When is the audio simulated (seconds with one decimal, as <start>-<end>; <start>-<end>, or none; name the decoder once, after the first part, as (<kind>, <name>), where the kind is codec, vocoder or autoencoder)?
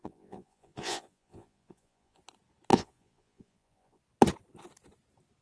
0.0-2.2 (vocoder, Vocos); 2.7-4.0